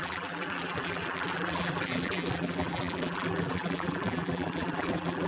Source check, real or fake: fake